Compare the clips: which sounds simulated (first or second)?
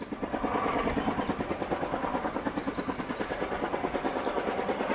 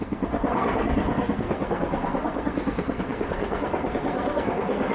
second